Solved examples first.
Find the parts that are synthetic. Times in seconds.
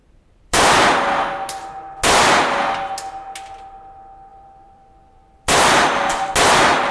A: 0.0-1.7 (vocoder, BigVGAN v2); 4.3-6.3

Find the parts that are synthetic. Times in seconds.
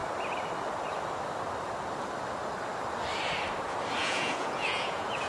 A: 4.0-5.3 (vocoder, Vocos)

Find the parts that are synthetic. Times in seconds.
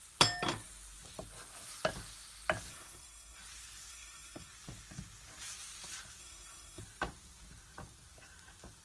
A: 2.7-3.4 (codec, SNAC); 3.9-4.5; 6.2-6.8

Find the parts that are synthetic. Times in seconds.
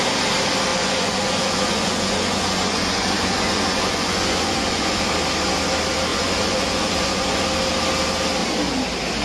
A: 0.7-5.0 (vocoder, Vocos); 6.1-7.4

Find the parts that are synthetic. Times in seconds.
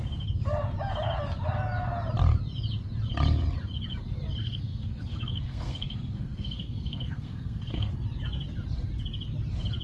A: 4.4-7.9 (codec, SNAC)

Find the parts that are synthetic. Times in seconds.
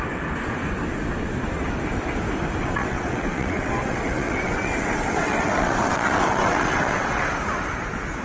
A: 2.6-7.3 (vocoder, WaveNeXt)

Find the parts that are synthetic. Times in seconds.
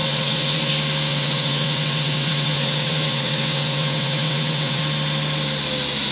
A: 0.0-0.7 (vocoder, WaveNeXt); 1.1-4.8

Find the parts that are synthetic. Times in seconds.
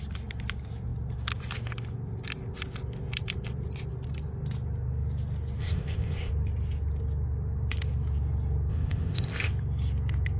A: 5.6-6.3 (codec, ZipCodec); 8.7-9.5